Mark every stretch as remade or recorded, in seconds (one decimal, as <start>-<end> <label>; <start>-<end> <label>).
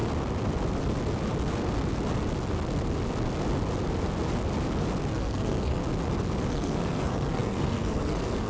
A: 0.0-5.1 recorded; 5.1-5.8 remade; 5.8-6.5 recorded; 6.5-8.5 remade